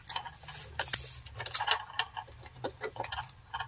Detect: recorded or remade recorded